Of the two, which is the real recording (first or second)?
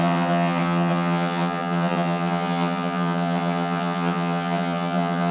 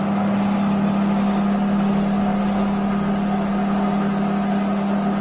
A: second